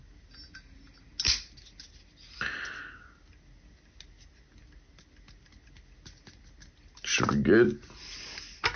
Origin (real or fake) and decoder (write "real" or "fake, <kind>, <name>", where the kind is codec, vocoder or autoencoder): real